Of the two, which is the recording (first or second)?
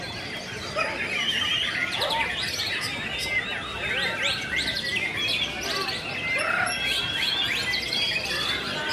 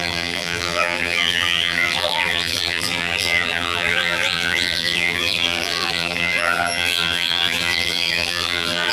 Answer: first